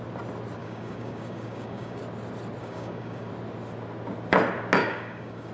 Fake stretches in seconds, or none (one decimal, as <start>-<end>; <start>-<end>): 0.6-2.0; 2.6-3.3; 4.8-5.5